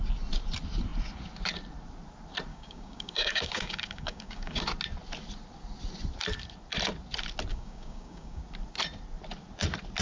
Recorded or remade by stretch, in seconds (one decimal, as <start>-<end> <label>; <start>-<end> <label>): 0.0-2.5 recorded; 2.5-4.6 remade; 4.6-7.5 recorded; 7.5-8.4 remade; 8.4-10.0 recorded